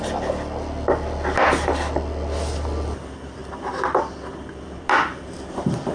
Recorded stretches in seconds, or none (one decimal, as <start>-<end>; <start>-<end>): 0.0-3.4; 4.8-5.9